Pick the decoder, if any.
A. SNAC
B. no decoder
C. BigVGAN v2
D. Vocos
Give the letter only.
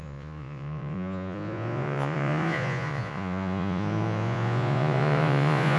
D